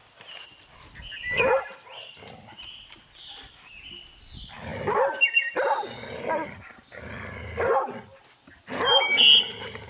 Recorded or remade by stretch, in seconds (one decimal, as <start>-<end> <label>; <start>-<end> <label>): 0.0-9.9 recorded